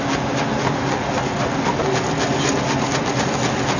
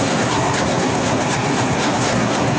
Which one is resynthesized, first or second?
second